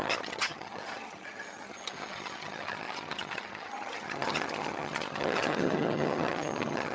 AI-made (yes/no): yes